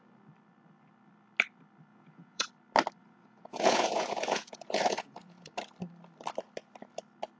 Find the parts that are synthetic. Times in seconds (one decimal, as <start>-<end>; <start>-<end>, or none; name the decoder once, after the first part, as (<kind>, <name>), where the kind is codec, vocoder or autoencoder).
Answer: 1.9-2.5 (vocoder, Vocos); 3.0-5.5